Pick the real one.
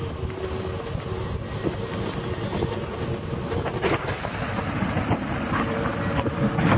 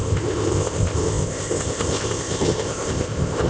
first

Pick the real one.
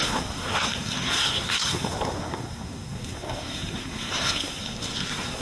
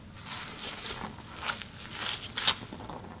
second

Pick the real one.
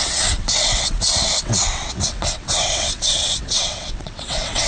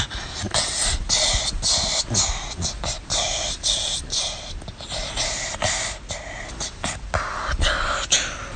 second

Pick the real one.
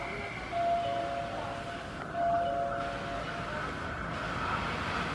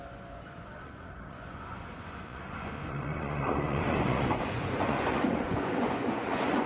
first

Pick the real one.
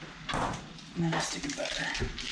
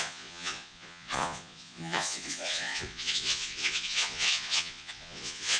first